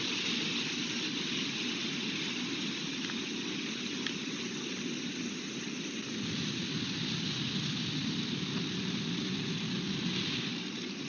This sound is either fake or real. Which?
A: real